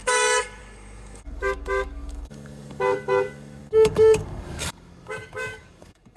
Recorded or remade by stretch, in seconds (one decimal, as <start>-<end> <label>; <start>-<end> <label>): 0.0-6.2 remade